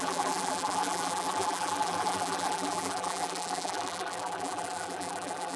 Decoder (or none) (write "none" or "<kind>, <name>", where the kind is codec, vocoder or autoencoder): vocoder, BigVGAN v2